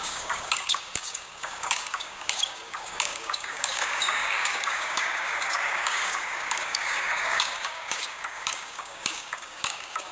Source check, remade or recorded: remade